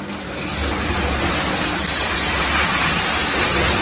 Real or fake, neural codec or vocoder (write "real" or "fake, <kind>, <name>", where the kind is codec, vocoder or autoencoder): real